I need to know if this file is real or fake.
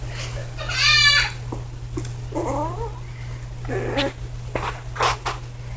real